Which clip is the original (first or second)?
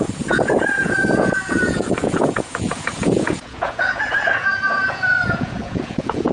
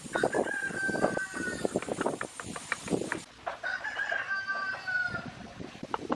second